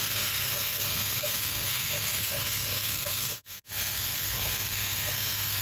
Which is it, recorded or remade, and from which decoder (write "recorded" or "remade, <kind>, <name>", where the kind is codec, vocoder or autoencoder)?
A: remade, codec, SNAC